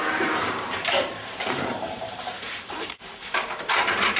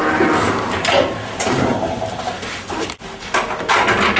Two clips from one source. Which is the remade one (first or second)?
first